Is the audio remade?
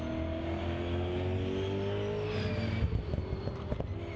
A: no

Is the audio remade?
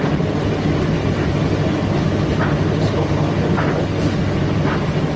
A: no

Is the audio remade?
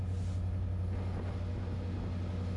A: no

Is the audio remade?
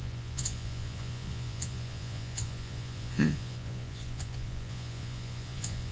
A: yes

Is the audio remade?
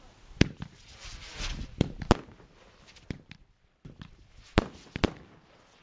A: no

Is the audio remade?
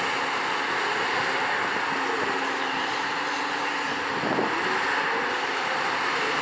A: no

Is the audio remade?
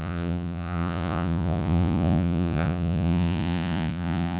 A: yes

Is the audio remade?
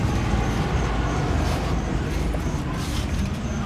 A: no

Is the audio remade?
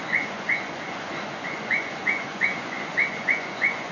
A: yes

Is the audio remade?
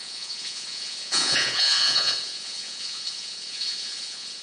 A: yes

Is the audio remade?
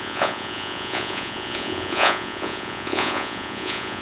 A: yes